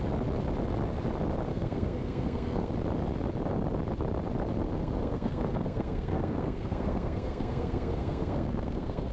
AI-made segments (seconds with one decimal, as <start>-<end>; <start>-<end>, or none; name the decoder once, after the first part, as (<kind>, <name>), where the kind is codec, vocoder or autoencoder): 1.5-2.7 (codec, SNAC); 4.7-9.1